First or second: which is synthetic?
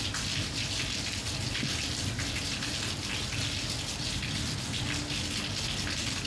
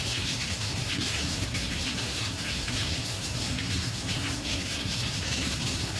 second